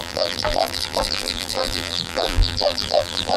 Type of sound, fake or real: fake